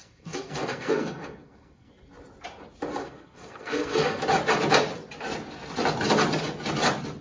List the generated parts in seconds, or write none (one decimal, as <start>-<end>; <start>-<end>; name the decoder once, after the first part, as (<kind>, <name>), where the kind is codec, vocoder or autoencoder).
0.0-1.9 (codec, SNAC); 3.0-4.2